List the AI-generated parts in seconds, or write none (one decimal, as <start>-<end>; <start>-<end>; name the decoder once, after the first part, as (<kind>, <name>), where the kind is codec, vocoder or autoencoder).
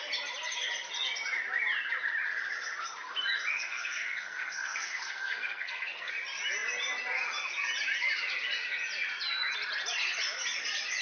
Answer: 3.5-6.1 (codec, SNAC)